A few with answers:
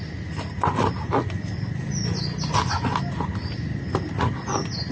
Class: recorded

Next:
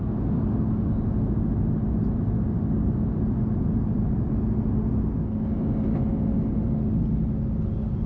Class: recorded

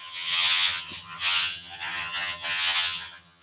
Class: remade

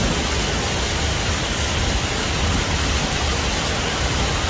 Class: recorded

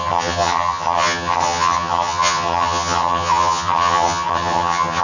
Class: remade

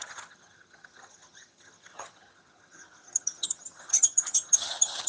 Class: remade